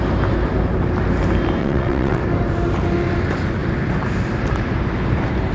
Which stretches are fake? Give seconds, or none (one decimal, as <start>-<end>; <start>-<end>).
1.6-2.2